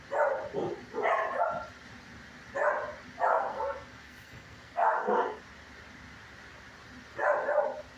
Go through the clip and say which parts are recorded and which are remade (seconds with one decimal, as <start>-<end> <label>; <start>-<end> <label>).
0.0-3.3 recorded; 3.3-5.4 remade; 5.4-8.0 recorded